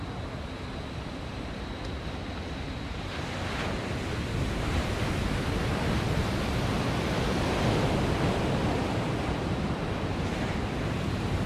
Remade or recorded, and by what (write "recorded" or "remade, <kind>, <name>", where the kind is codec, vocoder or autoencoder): recorded